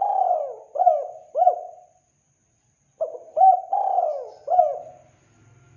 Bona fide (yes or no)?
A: yes